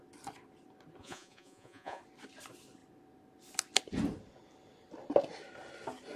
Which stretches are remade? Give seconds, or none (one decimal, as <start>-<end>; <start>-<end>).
1.0-2.0